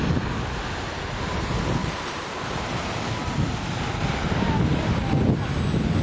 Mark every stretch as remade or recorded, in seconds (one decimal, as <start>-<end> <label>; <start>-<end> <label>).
0.0-1.8 recorded; 1.8-3.0 remade; 3.0-6.0 recorded